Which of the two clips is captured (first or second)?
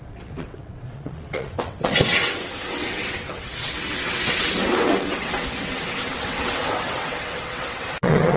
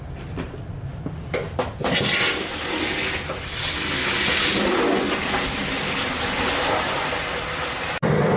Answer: second